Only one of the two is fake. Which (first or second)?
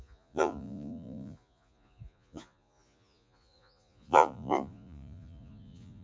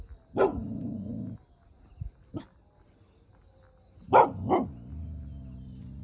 first